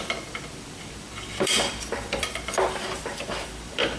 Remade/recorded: remade